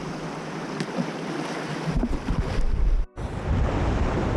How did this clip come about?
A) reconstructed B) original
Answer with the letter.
B